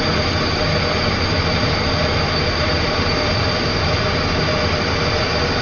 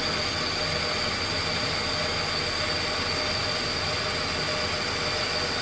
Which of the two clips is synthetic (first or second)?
first